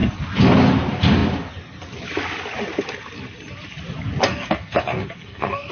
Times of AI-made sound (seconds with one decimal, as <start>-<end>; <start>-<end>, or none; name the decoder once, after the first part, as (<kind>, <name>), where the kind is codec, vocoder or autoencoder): 4.3-5.7 (codec, SNAC)